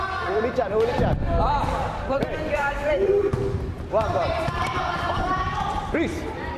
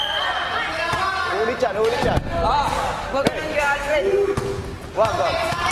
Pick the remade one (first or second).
first